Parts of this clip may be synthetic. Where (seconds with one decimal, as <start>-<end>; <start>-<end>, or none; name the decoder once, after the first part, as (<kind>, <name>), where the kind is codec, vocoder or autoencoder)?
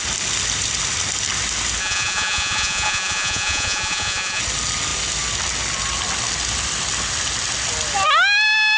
1.8-4.4 (vocoder, Vocos)